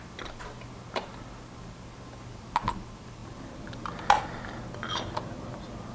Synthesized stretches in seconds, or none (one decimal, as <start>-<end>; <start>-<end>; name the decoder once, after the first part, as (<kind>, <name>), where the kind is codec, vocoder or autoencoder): none